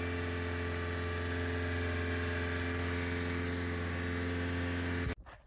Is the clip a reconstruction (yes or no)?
no